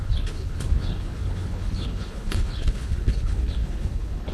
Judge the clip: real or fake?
fake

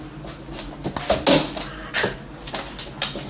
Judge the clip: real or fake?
real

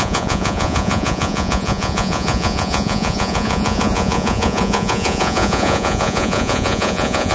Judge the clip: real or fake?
fake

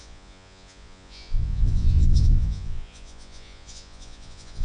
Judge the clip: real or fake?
fake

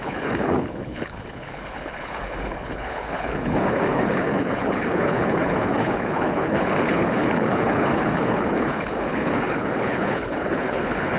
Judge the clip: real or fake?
fake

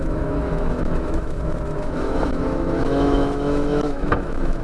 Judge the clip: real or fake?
fake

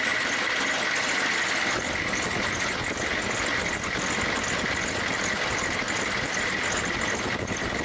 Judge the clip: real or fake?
real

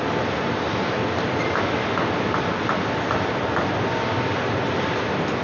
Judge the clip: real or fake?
real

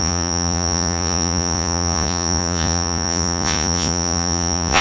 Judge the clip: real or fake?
fake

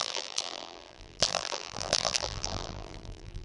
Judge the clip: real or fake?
fake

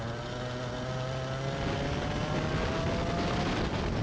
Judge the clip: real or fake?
real